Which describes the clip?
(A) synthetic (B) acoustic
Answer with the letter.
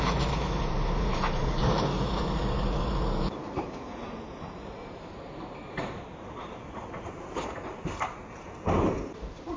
A